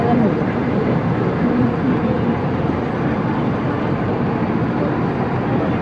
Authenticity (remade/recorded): recorded